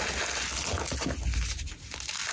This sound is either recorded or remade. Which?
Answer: recorded